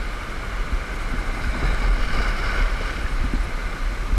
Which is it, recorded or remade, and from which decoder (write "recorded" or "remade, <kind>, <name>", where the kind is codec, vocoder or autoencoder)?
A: recorded